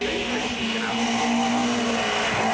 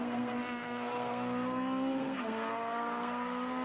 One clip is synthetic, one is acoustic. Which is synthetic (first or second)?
second